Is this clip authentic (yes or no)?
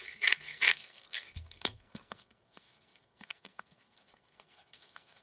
no